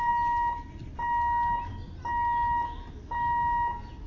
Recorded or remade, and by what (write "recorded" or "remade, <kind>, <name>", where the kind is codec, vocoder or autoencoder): recorded